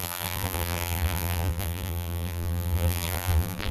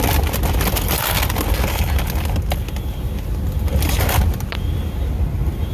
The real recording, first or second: second